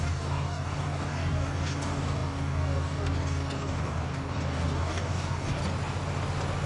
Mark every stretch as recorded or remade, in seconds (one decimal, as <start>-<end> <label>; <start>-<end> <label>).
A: 0.0-5.6 remade; 5.6-6.7 recorded